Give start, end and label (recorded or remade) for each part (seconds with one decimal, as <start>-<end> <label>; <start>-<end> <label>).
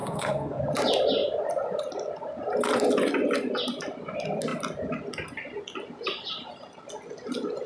0.0-0.6 remade; 0.6-7.7 recorded